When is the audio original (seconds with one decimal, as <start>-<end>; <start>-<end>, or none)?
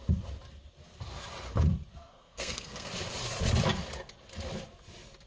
0.0-1.9; 2.9-5.3